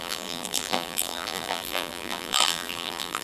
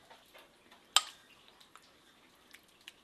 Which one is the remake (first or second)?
first